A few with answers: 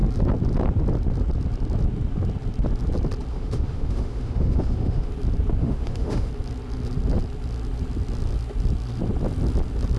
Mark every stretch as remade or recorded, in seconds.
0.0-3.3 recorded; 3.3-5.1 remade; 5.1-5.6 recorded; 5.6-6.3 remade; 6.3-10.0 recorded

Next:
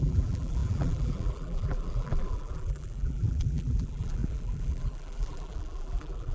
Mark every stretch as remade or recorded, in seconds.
0.0-6.3 remade

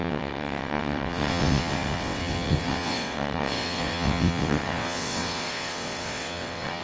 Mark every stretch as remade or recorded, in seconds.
0.0-6.8 remade

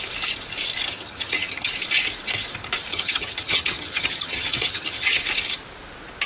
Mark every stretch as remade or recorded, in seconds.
0.0-0.9 recorded; 0.9-1.7 remade; 1.7-2.9 recorded; 2.9-5.2 remade; 5.2-6.3 recorded

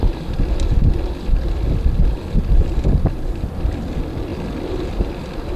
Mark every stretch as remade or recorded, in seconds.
0.0-5.6 recorded

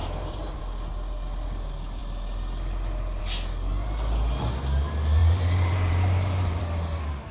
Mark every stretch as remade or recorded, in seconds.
0.0-0.6 remade; 0.6-5.2 recorded; 5.2-6.6 remade; 6.6-7.3 recorded